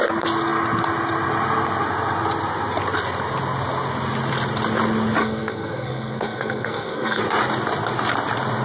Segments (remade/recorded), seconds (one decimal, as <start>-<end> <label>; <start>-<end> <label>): 0.0-5.2 recorded; 5.2-7.2 remade; 7.2-8.6 recorded